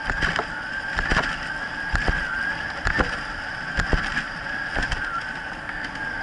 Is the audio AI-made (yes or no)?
no